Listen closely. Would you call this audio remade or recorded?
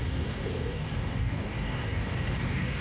remade